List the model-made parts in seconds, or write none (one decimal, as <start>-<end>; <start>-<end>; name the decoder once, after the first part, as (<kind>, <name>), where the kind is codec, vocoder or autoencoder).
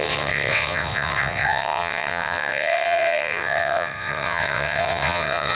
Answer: 0.0-5.5 (vocoder, WaveNeXt)